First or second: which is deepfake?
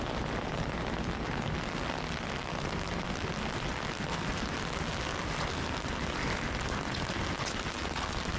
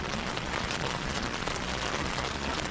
second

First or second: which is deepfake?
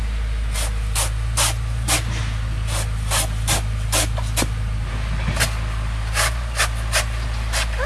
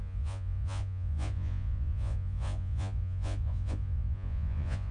second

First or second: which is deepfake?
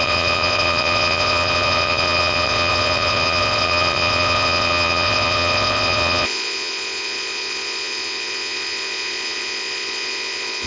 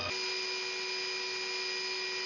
first